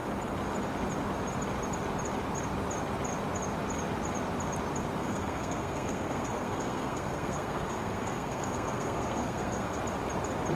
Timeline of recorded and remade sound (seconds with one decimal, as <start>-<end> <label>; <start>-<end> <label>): 0.0-5.0 recorded; 5.0-9.8 remade; 9.8-10.6 recorded